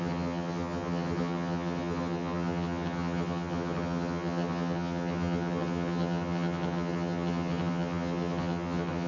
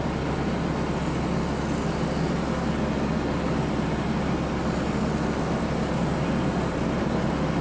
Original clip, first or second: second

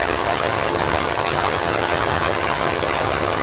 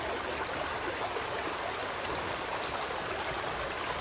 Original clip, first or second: second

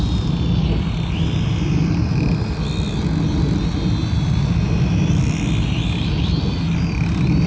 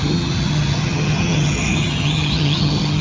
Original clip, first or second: first